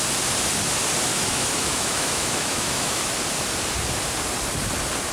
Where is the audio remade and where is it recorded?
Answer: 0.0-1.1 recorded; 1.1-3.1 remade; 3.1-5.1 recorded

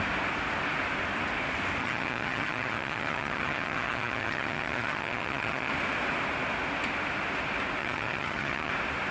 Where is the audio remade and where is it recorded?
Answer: 0.0-1.8 recorded; 1.8-5.7 remade; 5.7-7.8 recorded; 7.8-8.7 remade; 8.7-9.1 recorded

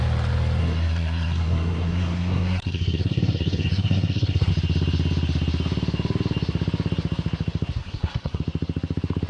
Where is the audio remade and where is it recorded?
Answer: 0.0-0.6 recorded; 0.6-4.5 remade; 4.5-7.8 recorded; 7.8-8.4 remade; 8.4-9.3 recorded

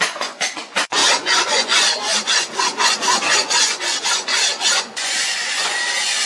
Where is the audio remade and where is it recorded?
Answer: 0.0-6.3 remade

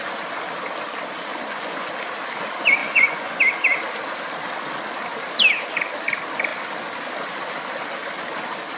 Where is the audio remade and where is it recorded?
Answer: 0.0-1.3 recorded; 1.3-1.9 remade; 1.9-2.8 recorded; 2.8-3.4 remade; 3.4-8.8 recorded

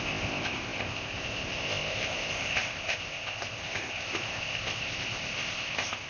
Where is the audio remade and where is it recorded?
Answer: 0.0-6.1 remade

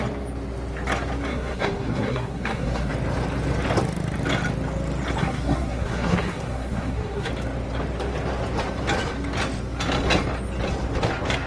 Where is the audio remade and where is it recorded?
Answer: 0.0-1.3 recorded; 1.3-2.9 remade; 2.9-5.2 recorded; 5.2-7.3 remade; 7.3-11.5 recorded

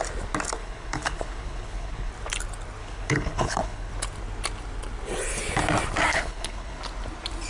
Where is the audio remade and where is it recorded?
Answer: 0.0-0.6 recorded; 0.6-2.1 remade; 2.1-2.8 recorded; 2.8-3.9 remade; 3.9-6.1 recorded; 6.1-6.8 remade; 6.8-7.5 recorded